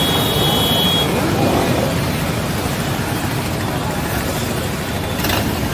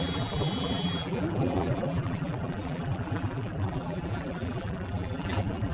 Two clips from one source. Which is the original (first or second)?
first